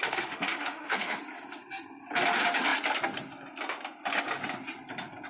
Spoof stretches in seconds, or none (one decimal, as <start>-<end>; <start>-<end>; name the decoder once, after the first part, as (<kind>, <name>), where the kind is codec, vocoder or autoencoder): 0.0-1.2 (autoencoder, DAC-VAE)